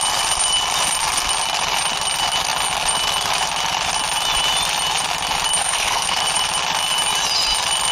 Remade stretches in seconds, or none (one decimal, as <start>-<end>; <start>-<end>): 5.6-6.2